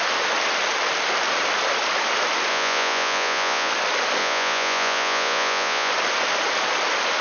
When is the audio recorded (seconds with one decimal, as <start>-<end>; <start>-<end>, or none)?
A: 0.0-2.5; 3.7-4.2; 5.9-7.2